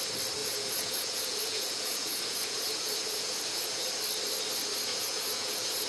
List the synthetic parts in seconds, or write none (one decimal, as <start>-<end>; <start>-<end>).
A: 0.4-3.9; 4.9-5.9